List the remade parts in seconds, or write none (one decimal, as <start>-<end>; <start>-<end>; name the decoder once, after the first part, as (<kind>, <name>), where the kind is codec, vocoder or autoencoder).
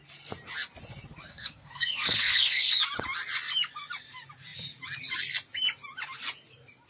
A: 1.3-2.8 (codec, SNAC)